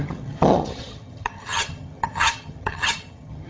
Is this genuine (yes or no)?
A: no